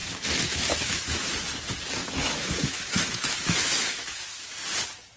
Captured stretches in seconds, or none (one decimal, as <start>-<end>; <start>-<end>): 1.3-2.0; 4.5-5.2